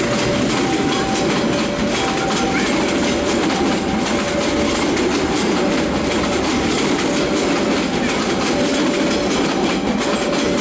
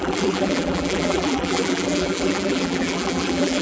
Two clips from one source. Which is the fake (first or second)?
second